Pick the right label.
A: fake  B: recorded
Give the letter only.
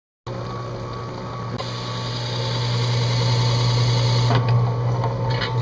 B